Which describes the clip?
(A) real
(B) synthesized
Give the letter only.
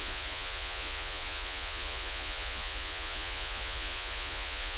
B